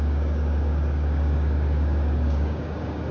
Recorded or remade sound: remade